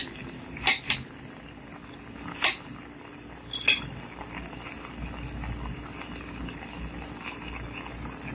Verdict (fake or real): real